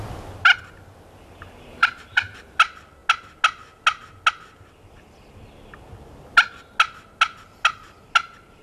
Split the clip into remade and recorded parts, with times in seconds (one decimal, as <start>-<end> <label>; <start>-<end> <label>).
0.0-1.7 recorded; 1.7-2.6 remade; 2.6-8.6 recorded